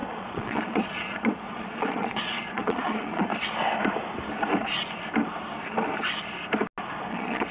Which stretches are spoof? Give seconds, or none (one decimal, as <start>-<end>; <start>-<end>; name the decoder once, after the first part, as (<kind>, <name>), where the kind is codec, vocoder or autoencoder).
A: 0.0-3.3 (vocoder, Vocos); 7.1-7.5